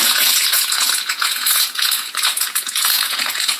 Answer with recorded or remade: remade